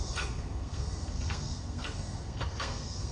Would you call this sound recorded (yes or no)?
no